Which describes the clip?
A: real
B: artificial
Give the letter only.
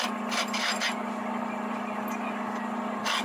A